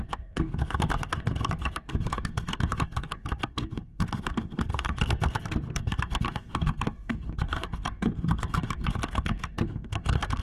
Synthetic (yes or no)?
yes